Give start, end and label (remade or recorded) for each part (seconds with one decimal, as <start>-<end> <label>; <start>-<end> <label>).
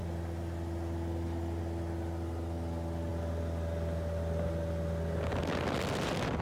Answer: 0.0-6.4 recorded